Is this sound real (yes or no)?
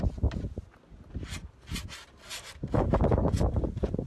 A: yes